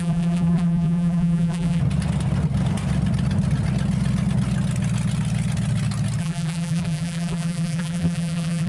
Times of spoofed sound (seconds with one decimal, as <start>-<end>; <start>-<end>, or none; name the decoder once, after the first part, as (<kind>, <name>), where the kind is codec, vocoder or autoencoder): 0.0-1.8 (vocoder, BigVGAN v2); 6.2-8.7